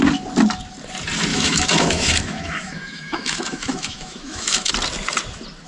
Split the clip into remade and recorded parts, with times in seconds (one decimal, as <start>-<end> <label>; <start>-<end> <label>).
0.0-1.3 recorded; 1.3-4.7 remade; 4.7-5.7 recorded